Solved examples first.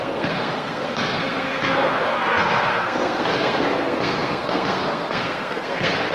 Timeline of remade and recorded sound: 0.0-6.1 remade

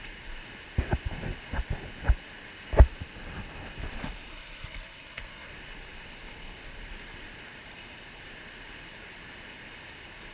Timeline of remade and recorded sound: 0.0-4.3 recorded; 4.3-5.5 remade; 5.5-10.3 recorded

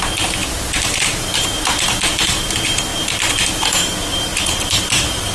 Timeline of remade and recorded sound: 0.0-5.3 recorded

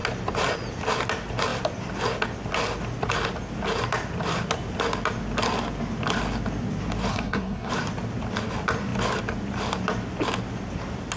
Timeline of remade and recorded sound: 0.0-7.1 recorded; 7.1-7.7 remade; 7.7-11.2 recorded

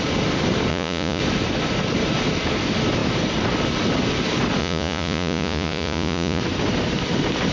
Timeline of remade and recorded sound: 0.0-0.7 recorded; 0.7-1.2 remade; 1.2-4.6 recorded; 4.6-6.4 remade; 6.4-7.5 recorded